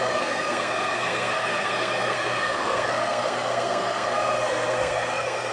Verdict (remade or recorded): remade